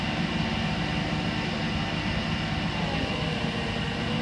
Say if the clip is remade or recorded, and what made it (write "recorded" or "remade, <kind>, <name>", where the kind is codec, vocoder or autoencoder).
recorded